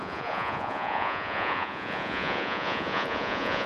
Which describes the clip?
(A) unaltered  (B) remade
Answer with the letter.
B